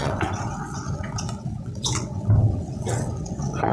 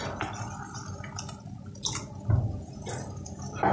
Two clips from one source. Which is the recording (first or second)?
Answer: second